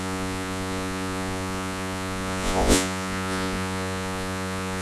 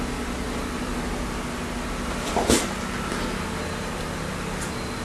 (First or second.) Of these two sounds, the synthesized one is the first